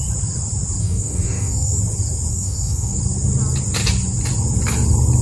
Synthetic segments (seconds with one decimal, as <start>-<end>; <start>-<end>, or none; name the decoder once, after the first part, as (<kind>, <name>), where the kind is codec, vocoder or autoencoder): 0.8-1.8 (codec, DAC); 2.3-3.0